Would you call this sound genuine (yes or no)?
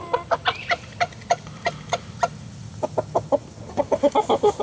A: yes